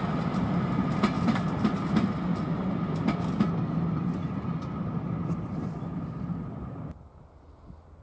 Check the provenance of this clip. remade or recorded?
recorded